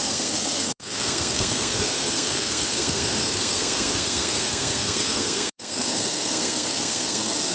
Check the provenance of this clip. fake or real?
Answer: fake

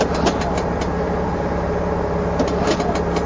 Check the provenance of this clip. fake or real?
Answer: real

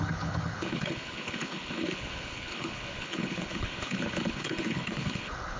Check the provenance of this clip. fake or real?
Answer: fake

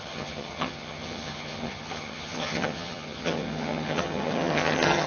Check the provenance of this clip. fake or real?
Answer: fake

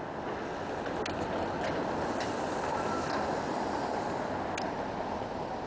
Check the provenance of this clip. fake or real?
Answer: real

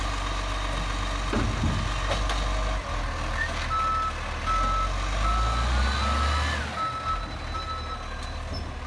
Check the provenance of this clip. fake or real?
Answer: real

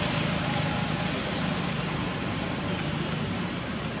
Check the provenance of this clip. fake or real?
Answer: real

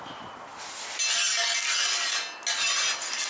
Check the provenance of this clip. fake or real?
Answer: real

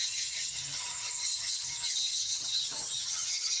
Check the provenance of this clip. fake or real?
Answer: fake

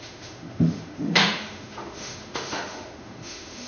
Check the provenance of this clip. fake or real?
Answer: fake